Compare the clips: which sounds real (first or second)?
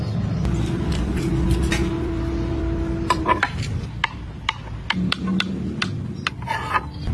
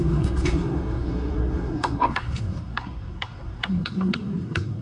first